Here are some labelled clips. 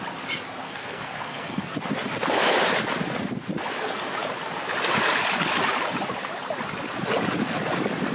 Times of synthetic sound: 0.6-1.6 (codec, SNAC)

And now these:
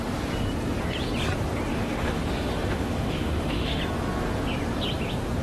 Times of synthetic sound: 1.7-3.8 (autoencoder, DAC-VAE)

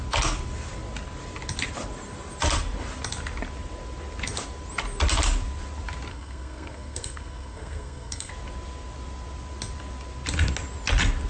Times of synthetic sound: 6.1-8.3 (codec, SNAC)

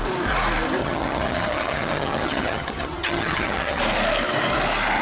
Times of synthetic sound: 0.8-3.8 (vocoder, HiFi-GAN)